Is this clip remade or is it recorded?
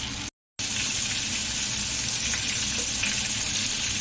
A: recorded